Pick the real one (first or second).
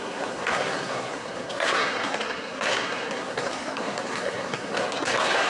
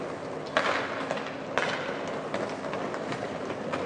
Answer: second